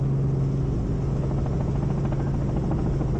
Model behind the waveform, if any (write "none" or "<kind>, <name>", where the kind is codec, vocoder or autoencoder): none